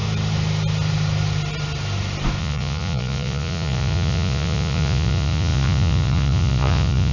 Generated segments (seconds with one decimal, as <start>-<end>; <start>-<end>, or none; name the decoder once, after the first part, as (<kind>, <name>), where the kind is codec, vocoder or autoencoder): 2.4-7.1 (vocoder, Vocos)